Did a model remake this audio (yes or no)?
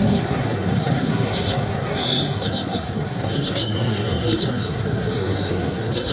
yes